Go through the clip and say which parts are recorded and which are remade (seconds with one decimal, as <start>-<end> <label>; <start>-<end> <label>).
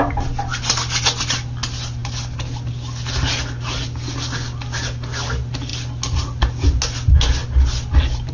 0.0-8.3 recorded